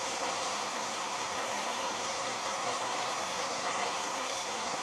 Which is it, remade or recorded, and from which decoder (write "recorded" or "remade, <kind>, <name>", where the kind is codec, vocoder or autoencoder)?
remade, codec, SNAC